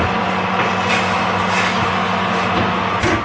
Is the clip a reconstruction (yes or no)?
no